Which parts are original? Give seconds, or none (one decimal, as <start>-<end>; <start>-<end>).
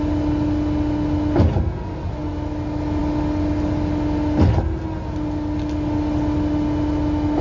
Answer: 0.0-7.4